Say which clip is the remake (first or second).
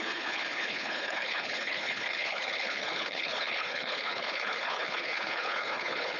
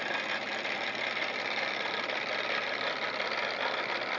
first